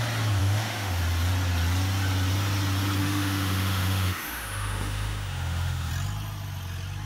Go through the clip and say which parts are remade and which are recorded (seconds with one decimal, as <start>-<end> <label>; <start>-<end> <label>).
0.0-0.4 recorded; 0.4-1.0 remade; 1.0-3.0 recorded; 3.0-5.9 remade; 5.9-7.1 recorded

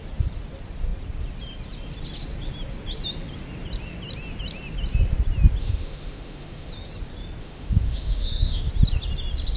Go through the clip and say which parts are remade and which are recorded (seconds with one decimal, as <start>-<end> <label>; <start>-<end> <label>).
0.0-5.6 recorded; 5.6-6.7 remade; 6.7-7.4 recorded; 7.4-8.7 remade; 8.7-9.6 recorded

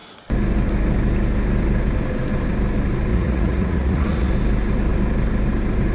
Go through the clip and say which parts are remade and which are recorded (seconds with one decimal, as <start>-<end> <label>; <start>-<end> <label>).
0.0-3.1 recorded; 3.1-4.3 remade; 4.3-5.9 recorded

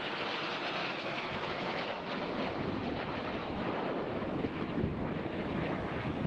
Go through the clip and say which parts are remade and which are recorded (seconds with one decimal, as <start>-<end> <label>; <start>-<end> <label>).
0.0-0.8 recorded; 0.8-2.2 remade; 2.2-3.4 recorded; 3.4-6.3 remade

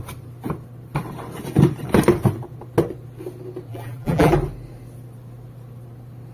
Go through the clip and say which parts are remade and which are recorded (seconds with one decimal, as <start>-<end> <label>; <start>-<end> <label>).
0.0-3.7 recorded; 3.7-4.3 remade; 4.3-6.3 recorded